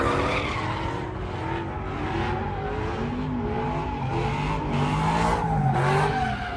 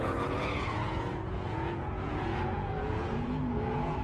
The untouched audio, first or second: first